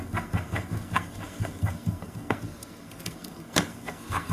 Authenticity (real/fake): fake